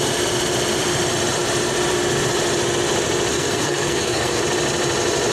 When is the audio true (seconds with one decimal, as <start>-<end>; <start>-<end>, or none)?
0.0-3.3; 4.4-5.3